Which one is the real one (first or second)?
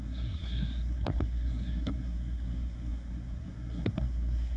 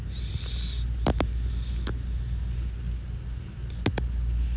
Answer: second